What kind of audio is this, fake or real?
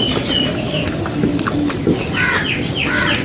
real